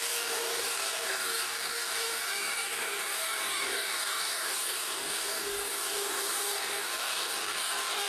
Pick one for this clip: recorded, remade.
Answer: remade